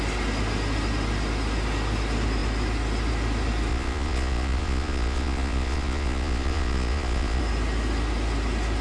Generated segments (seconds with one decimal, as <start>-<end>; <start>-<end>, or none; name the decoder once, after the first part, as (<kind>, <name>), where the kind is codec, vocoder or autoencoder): 3.7-7.4 (vocoder, Vocos)